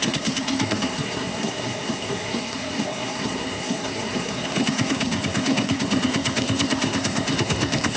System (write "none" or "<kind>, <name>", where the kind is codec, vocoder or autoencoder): codec, SNAC